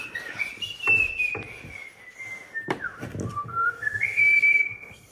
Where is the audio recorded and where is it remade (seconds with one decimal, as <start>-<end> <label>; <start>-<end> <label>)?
0.0-3.3 recorded; 3.3-5.1 remade